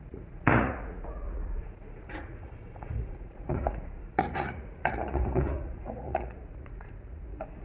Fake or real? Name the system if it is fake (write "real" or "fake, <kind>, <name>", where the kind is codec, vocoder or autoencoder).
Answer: fake, vocoder, Vocos